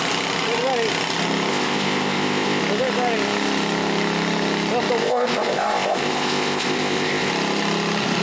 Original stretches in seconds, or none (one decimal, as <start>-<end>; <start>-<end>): 0.0-1.5; 2.6-5.0; 7.3-8.2